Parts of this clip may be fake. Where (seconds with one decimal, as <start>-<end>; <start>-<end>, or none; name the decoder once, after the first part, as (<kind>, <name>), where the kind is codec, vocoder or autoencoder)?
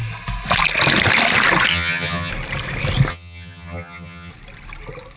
1.7-2.3 (vocoder, HiFi-GAN); 3.1-4.3